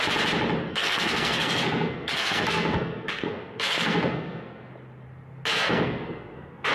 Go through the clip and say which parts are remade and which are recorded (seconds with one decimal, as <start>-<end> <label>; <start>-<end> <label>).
0.0-0.7 recorded; 0.7-4.7 remade; 4.7-5.5 recorded; 5.5-6.7 remade